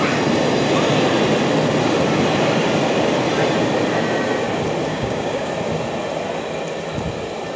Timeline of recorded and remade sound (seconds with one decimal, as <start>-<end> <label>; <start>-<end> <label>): 0.0-4.9 recorded; 4.9-5.5 remade; 5.5-7.6 recorded